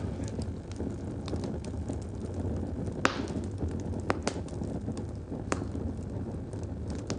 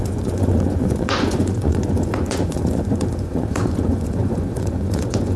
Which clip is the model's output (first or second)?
second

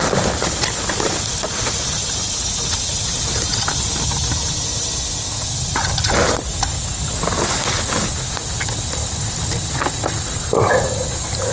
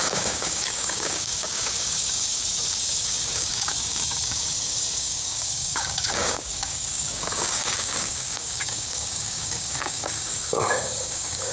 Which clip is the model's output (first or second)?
second